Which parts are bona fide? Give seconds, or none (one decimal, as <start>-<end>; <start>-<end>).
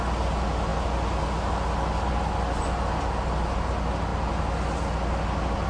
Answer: 0.0-5.7